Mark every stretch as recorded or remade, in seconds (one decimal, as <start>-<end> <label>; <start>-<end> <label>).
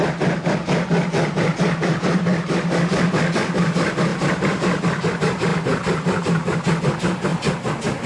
0.0-8.1 remade